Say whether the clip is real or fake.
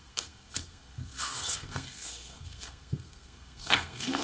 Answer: fake